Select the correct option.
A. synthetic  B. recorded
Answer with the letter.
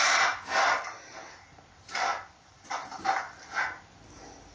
B